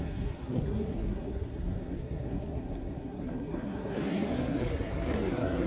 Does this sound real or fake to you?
fake